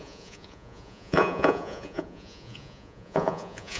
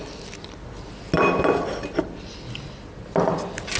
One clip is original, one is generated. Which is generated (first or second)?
first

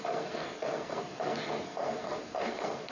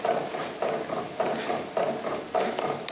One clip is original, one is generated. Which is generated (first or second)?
first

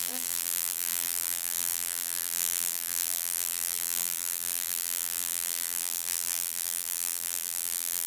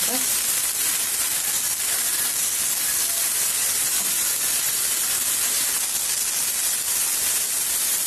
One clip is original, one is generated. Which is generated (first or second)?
first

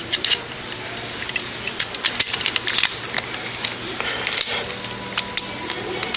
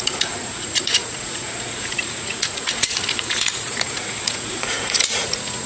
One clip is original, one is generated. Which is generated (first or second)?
second